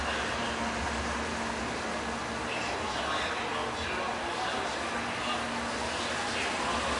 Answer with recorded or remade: recorded